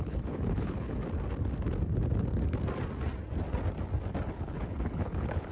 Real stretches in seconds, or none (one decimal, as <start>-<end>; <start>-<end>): 1.0-4.3